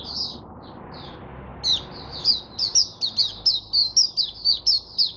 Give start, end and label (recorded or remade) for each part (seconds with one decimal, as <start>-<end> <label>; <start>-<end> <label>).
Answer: 0.0-5.2 recorded